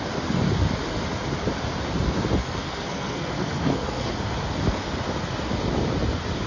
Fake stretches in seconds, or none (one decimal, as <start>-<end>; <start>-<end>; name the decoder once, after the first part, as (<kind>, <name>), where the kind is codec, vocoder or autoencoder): 2.4-4.1 (codec, SNAC)